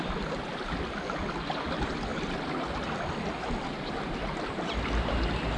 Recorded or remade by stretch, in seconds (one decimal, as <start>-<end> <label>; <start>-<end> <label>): 0.0-5.6 recorded